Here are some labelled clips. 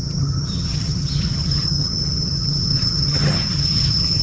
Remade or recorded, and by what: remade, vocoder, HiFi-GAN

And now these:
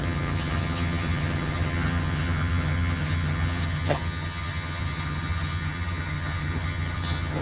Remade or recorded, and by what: remade, vocoder, HiFi-GAN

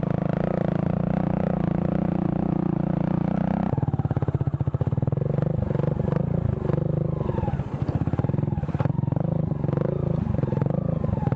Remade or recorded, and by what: recorded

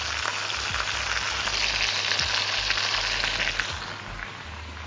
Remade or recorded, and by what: recorded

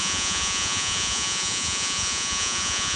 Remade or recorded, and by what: remade, vocoder, Vocos